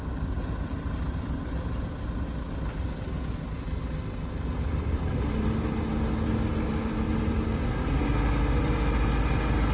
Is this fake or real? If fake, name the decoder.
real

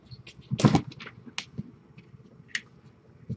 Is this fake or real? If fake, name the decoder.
real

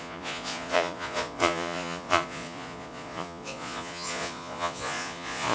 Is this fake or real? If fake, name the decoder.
fake, vocoder, Vocos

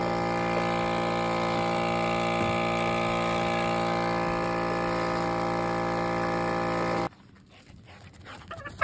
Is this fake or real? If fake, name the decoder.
real